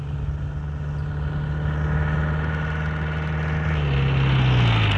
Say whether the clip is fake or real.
real